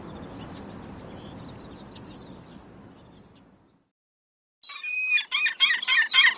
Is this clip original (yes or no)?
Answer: yes